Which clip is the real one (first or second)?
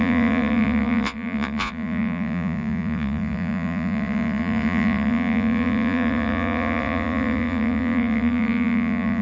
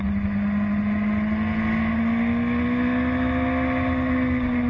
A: second